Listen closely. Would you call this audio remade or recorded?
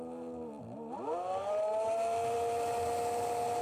recorded